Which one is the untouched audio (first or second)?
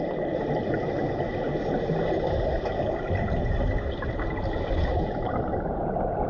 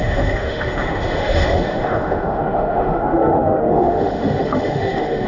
first